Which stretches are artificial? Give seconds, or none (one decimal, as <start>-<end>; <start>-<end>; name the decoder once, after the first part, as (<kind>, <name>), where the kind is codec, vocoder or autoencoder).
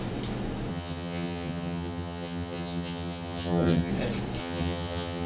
0.7-3.9 (vocoder, HiFi-GAN); 4.4-5.3